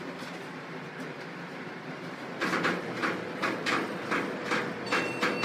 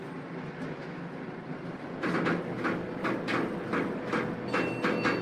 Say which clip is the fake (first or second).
first